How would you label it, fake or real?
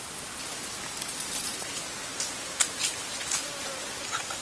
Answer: real